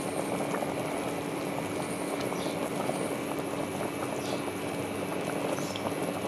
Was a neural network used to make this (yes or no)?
no